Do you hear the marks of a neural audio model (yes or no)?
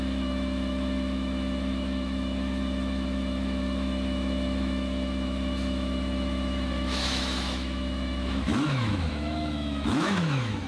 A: yes